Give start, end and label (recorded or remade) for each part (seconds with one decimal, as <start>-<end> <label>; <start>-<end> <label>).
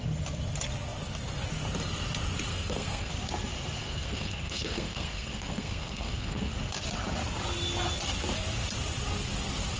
0.0-2.5 recorded; 2.5-3.1 remade; 3.1-3.8 recorded; 3.8-6.5 remade; 6.5-9.8 recorded